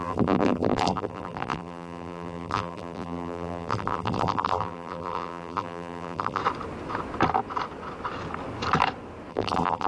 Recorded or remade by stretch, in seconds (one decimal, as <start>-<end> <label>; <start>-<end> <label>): 0.0-6.4 remade; 6.4-9.3 recorded; 9.3-9.9 remade